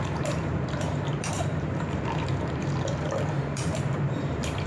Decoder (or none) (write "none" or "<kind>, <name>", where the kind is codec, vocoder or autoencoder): vocoder, BigVGAN v2